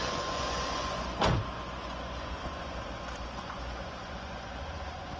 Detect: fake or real fake